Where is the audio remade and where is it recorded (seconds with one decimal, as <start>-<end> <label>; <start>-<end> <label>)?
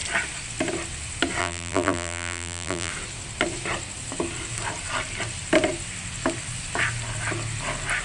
0.0-1.4 recorded; 1.4-2.9 remade; 2.9-8.0 recorded